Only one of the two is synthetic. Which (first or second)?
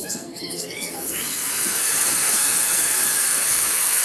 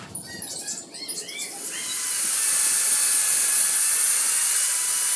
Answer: first